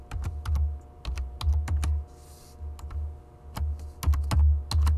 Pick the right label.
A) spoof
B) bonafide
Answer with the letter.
B